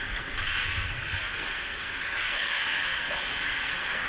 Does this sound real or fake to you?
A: fake